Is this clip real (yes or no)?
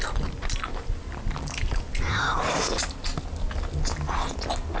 yes